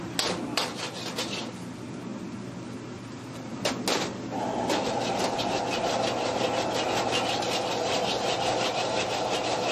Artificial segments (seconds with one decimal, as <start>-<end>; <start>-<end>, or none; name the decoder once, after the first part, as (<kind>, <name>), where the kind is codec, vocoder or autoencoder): none